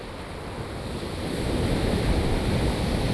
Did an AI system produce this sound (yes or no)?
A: no